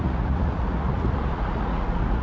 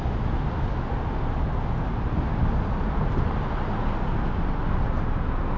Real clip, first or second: second